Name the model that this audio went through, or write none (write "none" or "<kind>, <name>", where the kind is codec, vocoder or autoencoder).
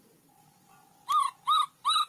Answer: none